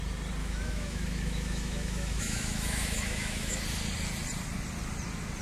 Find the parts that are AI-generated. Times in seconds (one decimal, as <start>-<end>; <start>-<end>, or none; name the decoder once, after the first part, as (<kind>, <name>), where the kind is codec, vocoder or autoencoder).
0.4-3.6 (autoencoder, DAC-VAE)